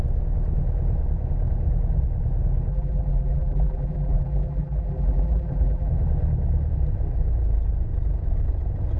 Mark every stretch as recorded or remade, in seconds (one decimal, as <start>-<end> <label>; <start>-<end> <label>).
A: 0.0-2.7 recorded; 2.7-5.9 remade; 5.9-9.0 recorded